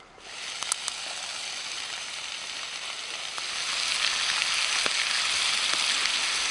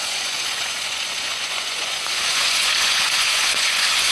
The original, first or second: first